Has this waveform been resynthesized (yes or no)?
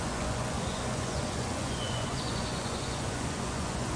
yes